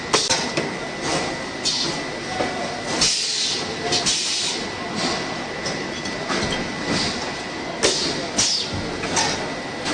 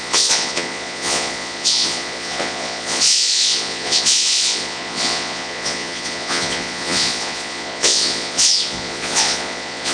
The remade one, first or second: second